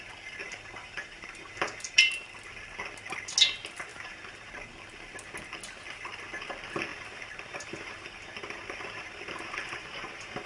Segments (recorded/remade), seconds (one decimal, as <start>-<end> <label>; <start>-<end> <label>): 0.0-0.4 recorded; 0.4-2.1 remade; 2.1-3.9 recorded; 3.9-4.5 remade; 4.5-6.9 recorded; 6.9-10.5 remade